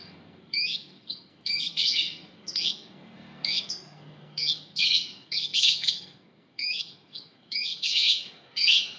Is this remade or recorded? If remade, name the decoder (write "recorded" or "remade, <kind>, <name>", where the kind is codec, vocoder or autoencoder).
remade, codec, SNAC